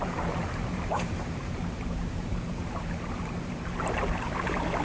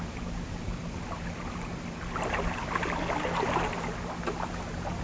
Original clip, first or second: second